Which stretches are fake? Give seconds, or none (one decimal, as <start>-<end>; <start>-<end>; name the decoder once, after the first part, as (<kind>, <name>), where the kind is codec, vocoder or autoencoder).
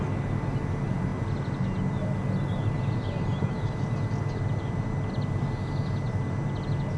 none